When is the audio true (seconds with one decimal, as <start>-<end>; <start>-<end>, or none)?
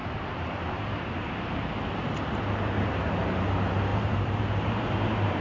1.3-3.9